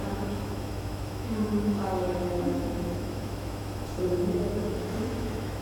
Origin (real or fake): fake